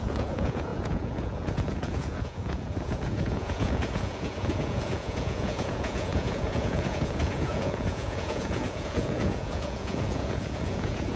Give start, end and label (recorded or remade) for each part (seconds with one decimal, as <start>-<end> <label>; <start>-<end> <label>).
0.0-11.2 remade